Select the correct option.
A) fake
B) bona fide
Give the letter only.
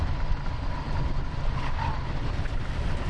B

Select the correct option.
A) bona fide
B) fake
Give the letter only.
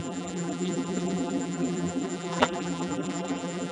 B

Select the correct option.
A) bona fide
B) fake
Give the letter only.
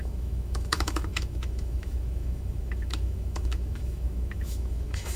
B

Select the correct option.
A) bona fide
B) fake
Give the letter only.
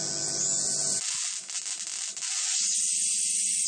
A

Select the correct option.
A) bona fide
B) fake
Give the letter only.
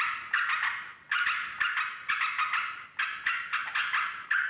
A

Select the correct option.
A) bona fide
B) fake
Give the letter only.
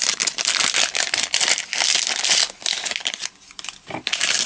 A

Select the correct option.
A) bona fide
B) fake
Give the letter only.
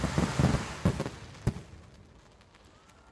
A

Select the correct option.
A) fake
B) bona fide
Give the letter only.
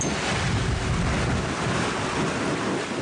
B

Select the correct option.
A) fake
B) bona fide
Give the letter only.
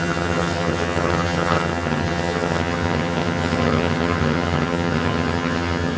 A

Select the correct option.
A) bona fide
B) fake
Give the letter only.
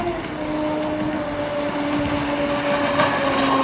A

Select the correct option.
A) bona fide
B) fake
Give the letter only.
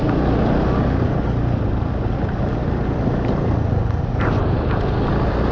A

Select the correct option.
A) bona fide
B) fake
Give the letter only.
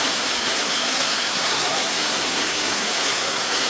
B